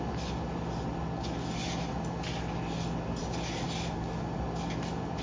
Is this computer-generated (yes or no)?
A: no